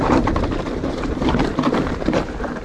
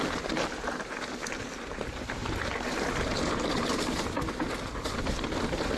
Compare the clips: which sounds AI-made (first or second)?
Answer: first